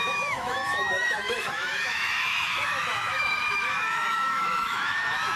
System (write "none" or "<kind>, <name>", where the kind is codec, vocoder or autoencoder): autoencoder, DAC-VAE